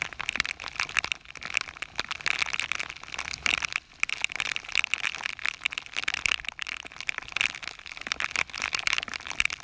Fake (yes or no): no